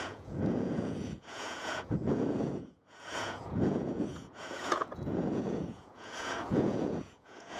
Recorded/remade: remade